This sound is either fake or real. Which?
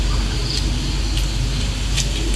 real